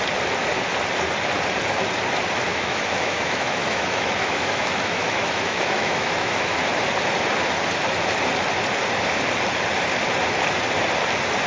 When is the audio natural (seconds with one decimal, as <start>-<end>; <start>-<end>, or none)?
0.0-2.5; 6.6-11.5